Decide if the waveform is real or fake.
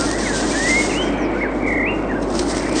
real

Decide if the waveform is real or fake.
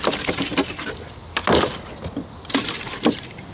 real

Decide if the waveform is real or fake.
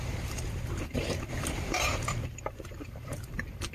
fake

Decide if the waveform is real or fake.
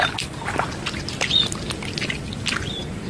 real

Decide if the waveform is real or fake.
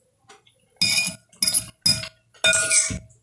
real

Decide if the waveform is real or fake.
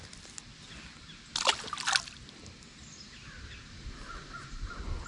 real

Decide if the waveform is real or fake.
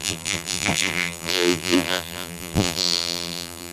fake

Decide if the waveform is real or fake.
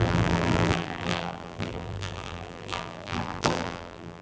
fake